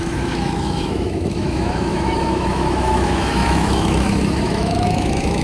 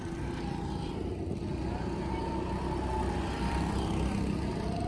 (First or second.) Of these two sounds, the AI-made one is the first